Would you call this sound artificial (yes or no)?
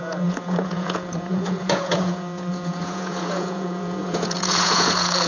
yes